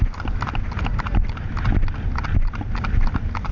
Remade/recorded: recorded